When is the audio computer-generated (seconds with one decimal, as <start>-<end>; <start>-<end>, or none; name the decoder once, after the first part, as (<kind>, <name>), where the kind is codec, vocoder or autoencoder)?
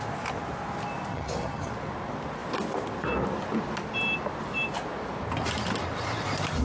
1.1-1.7 (vocoder, HiFi-GAN)